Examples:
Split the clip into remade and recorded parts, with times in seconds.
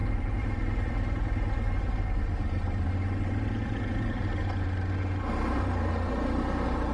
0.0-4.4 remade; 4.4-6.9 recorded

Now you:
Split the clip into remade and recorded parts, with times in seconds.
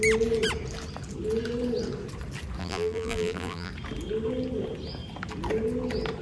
0.0-2.6 recorded; 2.6-3.7 remade; 3.7-6.2 recorded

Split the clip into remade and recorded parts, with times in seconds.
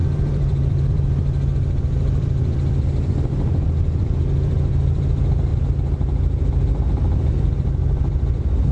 0.0-5.5 remade; 5.5-7.3 recorded; 7.3-8.7 remade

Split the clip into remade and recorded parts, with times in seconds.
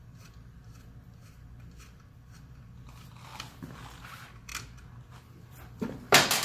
0.0-4.5 remade; 4.5-5.2 recorded; 5.2-6.4 remade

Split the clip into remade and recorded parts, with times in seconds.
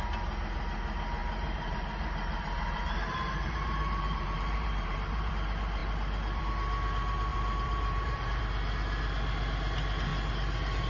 0.0-1.2 recorded; 1.2-5.3 remade; 5.3-7.3 recorded; 7.3-8.4 remade; 8.4-10.9 recorded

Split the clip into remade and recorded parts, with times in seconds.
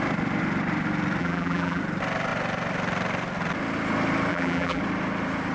0.0-1.2 recorded; 1.2-1.8 remade; 1.8-4.3 recorded; 4.3-4.8 remade; 4.8-5.5 recorded